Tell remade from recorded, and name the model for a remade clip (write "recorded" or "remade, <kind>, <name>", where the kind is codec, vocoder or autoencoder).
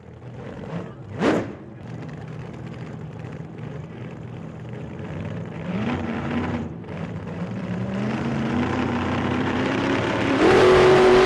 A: remade, vocoder, BigVGAN v2